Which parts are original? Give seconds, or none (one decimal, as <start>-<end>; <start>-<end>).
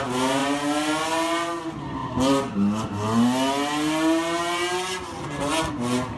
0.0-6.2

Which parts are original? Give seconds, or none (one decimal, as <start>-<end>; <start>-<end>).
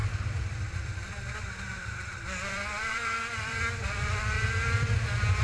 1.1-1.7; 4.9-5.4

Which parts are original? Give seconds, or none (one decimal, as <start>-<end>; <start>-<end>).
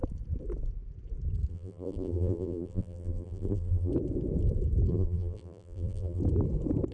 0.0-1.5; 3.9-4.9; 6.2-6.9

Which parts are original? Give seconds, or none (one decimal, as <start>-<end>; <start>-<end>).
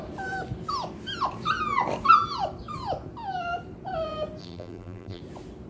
0.0-4.4; 5.2-5.7